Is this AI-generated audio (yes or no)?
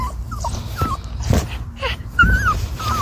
yes